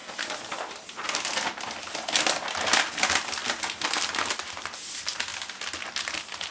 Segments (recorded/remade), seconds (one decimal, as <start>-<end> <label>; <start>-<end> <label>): 0.0-6.5 recorded